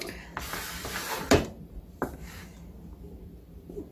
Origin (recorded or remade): remade